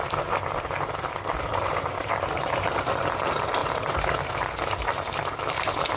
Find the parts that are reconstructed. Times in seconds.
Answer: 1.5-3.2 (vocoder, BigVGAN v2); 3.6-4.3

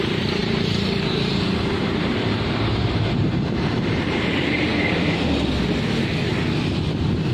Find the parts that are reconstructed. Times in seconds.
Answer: 0.0-4.7 (vocoder, BigVGAN v2)

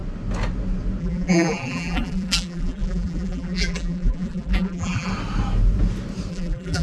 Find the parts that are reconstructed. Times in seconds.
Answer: 1.0-5.1 (vocoder, BigVGAN v2); 6.3-6.8

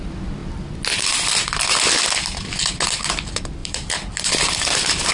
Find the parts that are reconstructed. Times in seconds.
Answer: 3.6-4.5 (vocoder, BigVGAN v2)

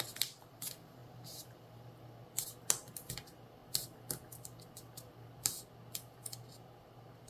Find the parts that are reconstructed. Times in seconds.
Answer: 1.0-2.1 (vocoder, BigVGAN v2)

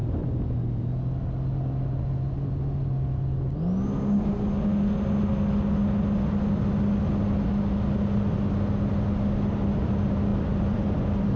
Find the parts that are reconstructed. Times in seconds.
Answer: 10.3-11.0 (vocoder, BigVGAN v2)

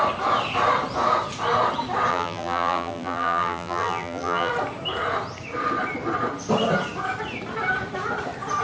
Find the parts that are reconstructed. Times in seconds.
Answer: 2.1-4.5 (vocoder, BigVGAN v2)

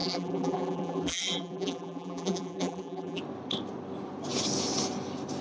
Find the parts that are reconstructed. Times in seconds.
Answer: 0.0-3.2 (vocoder, BigVGAN v2)